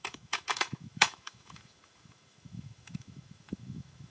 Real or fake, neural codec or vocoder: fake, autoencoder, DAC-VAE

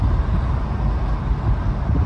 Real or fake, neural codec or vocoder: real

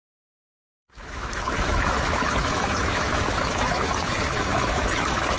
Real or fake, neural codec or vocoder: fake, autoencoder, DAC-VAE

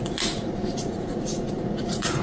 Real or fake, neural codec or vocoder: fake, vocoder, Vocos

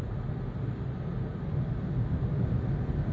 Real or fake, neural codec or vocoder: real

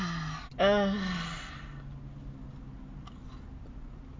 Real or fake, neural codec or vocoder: real